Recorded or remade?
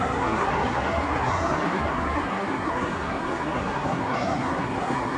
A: remade